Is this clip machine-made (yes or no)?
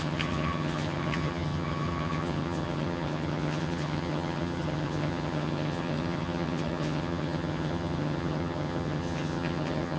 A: yes